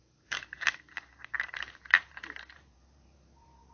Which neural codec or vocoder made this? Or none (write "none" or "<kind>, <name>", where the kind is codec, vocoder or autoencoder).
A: vocoder, BigVGAN v2